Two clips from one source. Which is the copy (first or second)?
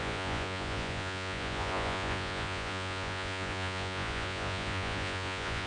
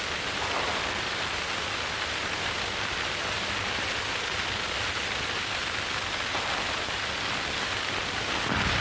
first